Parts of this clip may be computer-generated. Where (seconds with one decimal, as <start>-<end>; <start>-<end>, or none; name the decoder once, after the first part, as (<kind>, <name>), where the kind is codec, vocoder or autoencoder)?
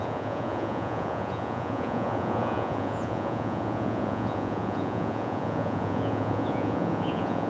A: 0.0-7.5 (vocoder, Vocos)